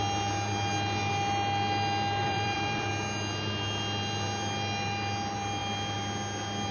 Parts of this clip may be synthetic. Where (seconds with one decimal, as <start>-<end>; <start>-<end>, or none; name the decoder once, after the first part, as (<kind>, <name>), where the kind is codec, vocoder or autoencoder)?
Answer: 2.2-2.9 (vocoder, BigVGAN v2)